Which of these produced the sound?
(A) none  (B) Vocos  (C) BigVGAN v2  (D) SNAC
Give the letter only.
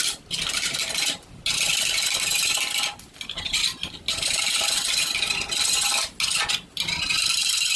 A